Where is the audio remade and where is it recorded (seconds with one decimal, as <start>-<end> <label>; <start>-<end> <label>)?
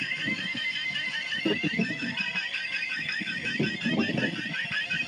0.0-5.1 remade